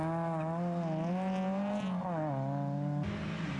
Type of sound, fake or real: real